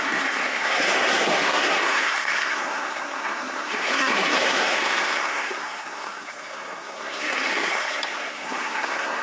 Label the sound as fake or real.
fake